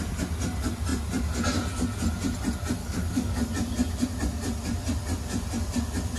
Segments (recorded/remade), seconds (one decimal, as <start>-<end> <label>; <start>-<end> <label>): 0.0-2.8 recorded; 2.8-3.5 remade; 3.5-6.2 recorded